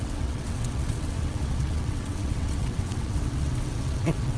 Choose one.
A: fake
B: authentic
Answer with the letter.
A